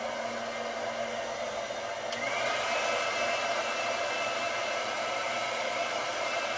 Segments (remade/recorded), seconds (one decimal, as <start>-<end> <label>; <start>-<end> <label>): 0.0-3.6 recorded; 3.6-6.6 remade